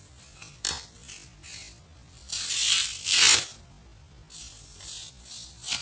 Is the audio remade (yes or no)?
no